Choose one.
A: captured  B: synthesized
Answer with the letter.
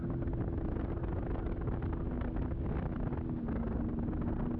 A